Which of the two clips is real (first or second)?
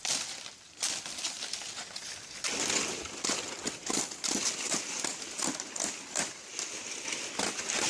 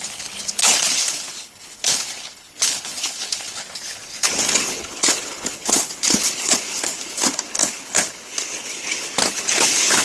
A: first